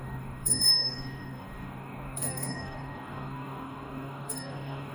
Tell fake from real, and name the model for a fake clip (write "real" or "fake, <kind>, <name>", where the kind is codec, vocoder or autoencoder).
fake, codec, DAC